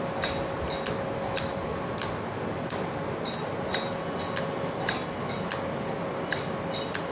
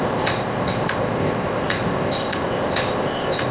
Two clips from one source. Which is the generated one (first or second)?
second